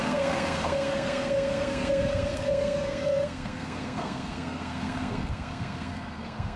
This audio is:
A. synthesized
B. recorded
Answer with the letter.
A